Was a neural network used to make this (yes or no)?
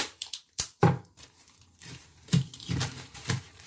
yes